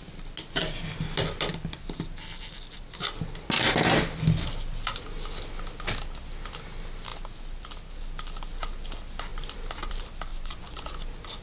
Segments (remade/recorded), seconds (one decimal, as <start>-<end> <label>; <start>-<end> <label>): 0.0-10.3 recorded; 10.3-10.9 remade; 10.9-11.4 recorded